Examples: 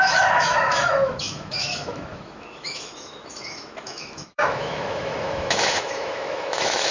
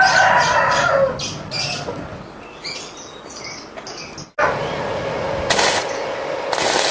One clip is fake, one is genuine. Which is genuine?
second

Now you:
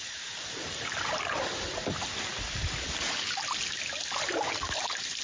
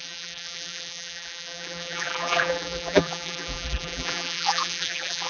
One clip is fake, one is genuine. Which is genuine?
first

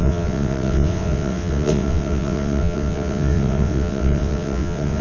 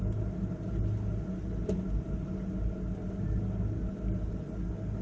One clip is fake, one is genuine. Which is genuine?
second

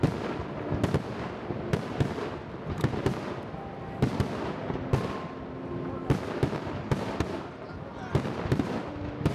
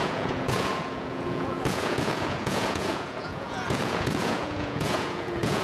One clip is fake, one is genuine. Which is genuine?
first